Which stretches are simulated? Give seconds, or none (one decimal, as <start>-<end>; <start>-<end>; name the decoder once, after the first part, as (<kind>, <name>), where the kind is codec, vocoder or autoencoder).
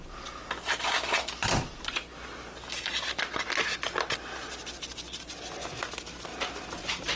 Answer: 0.0-1.5 (vocoder, BigVGAN v2); 2.0-3.2; 6.3-7.2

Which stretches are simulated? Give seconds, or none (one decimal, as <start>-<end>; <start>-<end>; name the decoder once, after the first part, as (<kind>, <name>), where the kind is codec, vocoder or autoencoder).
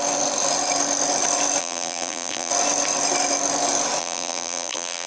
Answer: 1.6-2.5 (vocoder, BigVGAN v2); 4.0-5.1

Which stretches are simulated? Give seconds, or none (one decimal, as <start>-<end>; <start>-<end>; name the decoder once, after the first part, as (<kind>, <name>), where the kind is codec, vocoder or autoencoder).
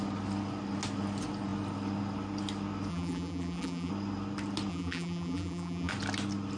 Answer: 2.9-3.9 (vocoder, BigVGAN v2); 4.7-5.9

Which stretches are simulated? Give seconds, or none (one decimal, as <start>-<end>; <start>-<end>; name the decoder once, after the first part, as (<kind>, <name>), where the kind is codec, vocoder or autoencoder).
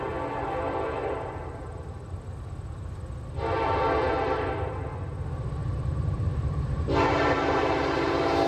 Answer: 1.0-2.1 (vocoder, BigVGAN v2); 5.6-8.1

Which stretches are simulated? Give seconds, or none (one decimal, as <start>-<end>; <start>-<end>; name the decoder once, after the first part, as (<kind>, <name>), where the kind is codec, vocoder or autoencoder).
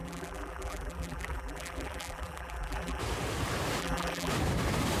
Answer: 0.0-3.0 (vocoder, BigVGAN v2); 3.8-4.3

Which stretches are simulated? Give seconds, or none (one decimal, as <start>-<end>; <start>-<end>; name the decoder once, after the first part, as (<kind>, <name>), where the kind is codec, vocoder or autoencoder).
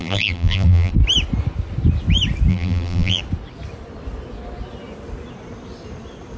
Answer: 0.0-0.9 (vocoder, BigVGAN v2); 2.5-3.2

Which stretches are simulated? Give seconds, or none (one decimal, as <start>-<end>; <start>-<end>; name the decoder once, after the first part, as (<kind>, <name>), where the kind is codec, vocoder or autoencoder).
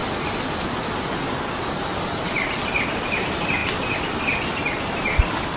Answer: 1.5-1.9 (vocoder, BigVGAN v2); 2.9-3.6; 4.8-5.6